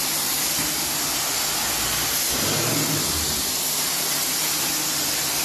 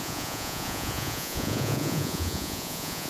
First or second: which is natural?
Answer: first